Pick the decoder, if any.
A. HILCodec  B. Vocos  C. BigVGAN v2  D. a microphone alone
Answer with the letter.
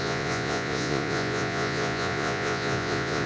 B